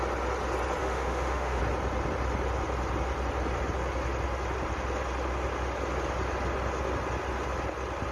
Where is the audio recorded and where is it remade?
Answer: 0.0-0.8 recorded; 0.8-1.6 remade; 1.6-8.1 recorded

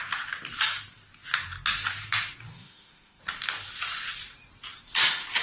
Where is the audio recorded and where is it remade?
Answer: 0.0-2.5 recorded; 2.5-3.2 remade; 3.2-5.4 recorded